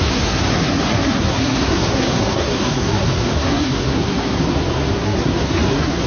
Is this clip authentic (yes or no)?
no